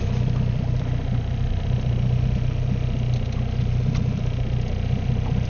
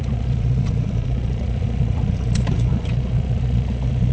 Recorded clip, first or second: first